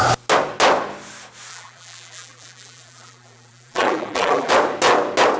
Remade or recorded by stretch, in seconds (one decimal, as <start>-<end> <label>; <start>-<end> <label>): 0.0-1.5 recorded; 1.5-4.5 remade; 4.5-5.4 recorded